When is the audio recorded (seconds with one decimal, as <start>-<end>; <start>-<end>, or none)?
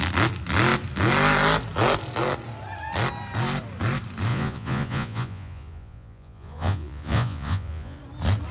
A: 0.0-4.3; 8.0-8.5